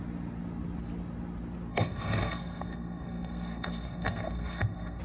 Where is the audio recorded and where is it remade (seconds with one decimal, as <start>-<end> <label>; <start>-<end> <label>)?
0.0-1.7 recorded; 1.7-5.0 remade